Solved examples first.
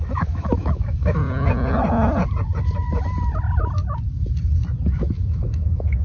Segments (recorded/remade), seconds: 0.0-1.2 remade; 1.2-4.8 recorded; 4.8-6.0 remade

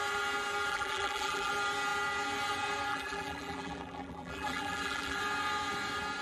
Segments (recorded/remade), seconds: 0.0-0.7 recorded; 0.7-1.5 remade; 1.5-2.9 recorded; 2.9-5.2 remade; 5.2-6.2 recorded

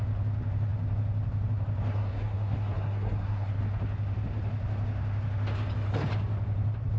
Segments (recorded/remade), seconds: 0.0-1.9 recorded; 1.9-3.6 remade; 3.6-7.0 recorded

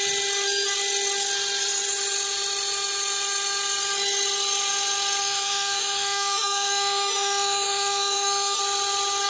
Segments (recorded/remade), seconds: 0.0-5.2 recorded; 5.2-8.6 remade; 8.6-9.3 recorded